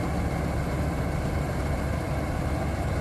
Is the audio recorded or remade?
recorded